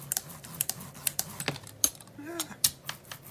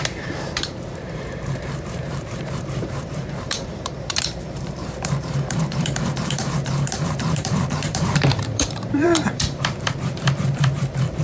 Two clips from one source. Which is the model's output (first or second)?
second